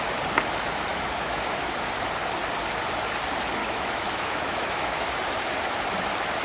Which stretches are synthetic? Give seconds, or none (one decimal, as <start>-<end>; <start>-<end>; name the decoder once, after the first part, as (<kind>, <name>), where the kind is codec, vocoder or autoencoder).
0.9-1.7 (autoencoder, DAC-VAE); 3.6-5.1